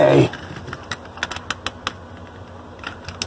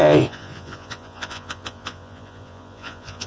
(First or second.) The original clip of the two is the first